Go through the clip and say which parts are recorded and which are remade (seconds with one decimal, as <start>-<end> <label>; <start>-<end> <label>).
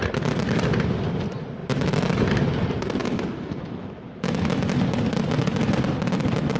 0.0-3.0 recorded; 3.0-4.6 remade; 4.6-6.6 recorded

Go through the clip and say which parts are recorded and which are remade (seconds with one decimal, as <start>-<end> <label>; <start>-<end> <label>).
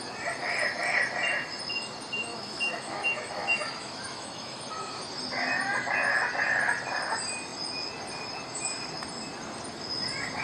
0.0-2.3 recorded; 2.3-5.0 remade; 5.0-10.4 recorded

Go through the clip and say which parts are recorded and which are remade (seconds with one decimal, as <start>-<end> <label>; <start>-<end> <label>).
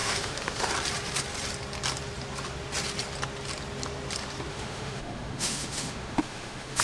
0.0-0.7 remade; 0.7-4.5 recorded; 4.5-6.8 remade